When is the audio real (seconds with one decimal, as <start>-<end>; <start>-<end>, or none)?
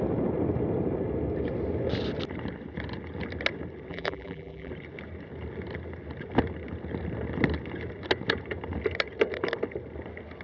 0.0-3.9; 4.7-10.4